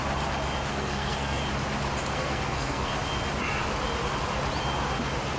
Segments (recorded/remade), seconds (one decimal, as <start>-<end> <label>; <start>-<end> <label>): 0.0-0.7 recorded; 0.7-1.4 remade; 1.4-2.1 recorded; 2.1-2.9 remade; 2.9-5.4 recorded